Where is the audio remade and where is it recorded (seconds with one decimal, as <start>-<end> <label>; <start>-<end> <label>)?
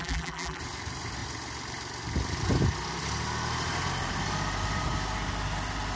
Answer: 0.0-0.6 remade; 0.6-6.0 recorded